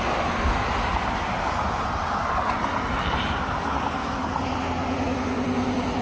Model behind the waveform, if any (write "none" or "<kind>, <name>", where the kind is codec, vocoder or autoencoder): none